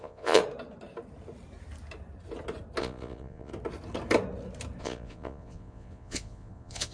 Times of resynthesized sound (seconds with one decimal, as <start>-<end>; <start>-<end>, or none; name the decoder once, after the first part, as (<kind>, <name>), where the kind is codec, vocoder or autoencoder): 0.0-0.4 (vocoder, Vocos); 2.8-3.5; 4.8-6.9